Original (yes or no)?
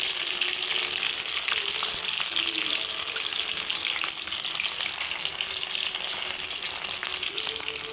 yes